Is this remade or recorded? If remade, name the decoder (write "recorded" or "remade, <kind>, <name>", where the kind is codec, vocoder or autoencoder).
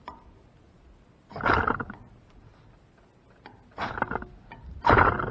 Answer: recorded